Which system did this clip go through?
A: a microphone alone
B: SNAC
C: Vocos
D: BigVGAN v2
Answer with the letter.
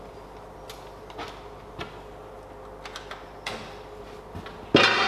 A